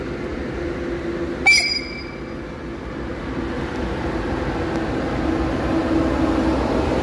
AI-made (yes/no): no